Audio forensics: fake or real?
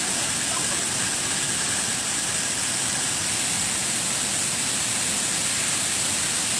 real